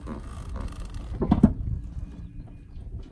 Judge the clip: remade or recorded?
recorded